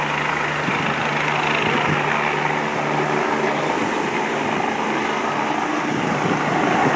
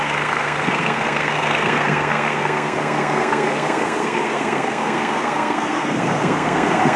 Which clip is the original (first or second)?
first